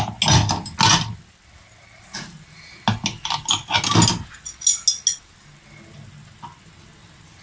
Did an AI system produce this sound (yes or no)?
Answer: no